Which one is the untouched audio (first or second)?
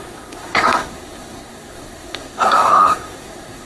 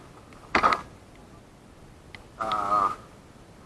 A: second